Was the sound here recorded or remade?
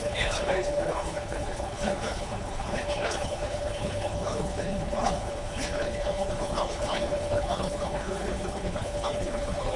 remade